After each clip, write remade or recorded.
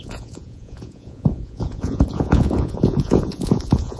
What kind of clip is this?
remade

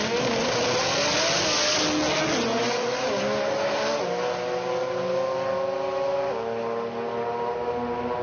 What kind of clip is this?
recorded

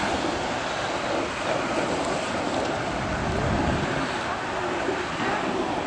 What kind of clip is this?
recorded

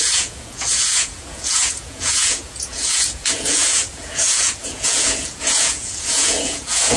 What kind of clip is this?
remade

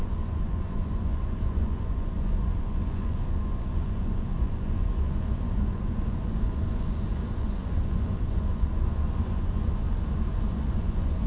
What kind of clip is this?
remade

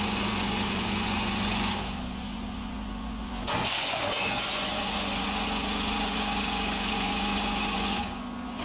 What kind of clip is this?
remade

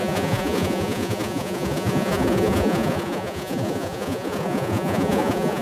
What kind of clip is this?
remade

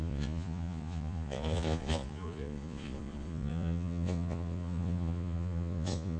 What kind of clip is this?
remade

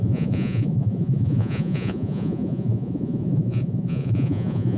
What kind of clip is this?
remade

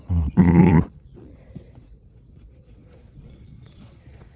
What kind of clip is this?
remade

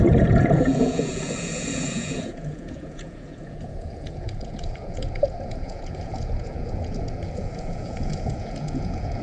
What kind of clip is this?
remade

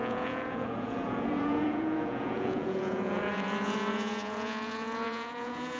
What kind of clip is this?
remade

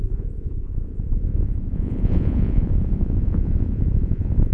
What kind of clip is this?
remade